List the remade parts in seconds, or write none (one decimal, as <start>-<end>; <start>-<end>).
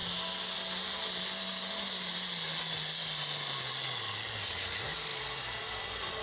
5.1-5.8